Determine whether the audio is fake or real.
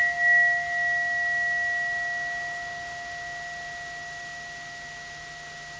real